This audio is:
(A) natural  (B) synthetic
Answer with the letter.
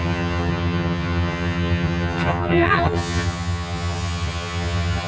B